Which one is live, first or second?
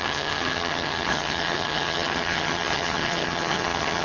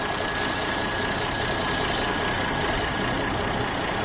second